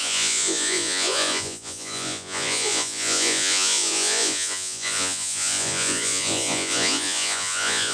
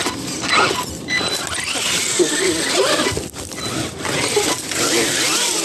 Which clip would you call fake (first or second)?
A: first